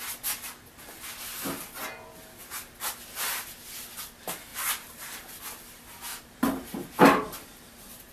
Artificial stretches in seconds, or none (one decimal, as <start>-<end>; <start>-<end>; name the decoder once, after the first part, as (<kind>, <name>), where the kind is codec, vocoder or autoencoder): 4.5-5.3 (vocoder, BigVGAN v2); 6.1-8.1